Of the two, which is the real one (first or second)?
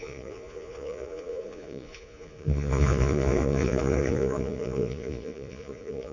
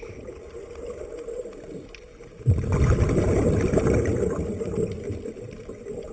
second